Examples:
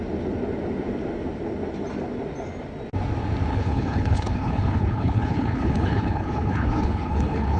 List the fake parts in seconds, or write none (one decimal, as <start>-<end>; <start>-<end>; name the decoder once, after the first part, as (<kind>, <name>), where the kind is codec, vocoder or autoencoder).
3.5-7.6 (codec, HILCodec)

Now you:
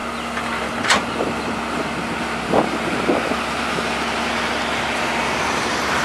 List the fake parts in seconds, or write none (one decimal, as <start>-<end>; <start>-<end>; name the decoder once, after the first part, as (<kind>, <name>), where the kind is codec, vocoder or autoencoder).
1.2-1.8 (vocoder, BigVGAN v2); 5.4-6.0

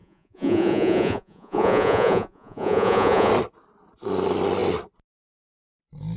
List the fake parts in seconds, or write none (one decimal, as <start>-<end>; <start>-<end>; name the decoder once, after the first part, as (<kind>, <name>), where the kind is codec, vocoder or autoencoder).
0.0-3.3 (vocoder, Vocos)